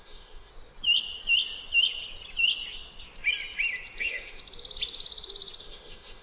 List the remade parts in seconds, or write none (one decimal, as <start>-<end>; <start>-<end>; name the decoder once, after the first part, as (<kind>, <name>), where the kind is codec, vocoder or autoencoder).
0.0-0.5 (autoencoder, DAC-VAE); 4.0-4.4; 5.6-6.2